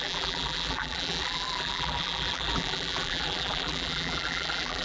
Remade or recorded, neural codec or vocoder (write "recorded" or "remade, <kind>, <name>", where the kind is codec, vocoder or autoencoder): remade, vocoder, BigVGAN v2